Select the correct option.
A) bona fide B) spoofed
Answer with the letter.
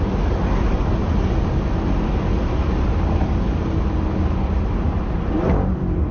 A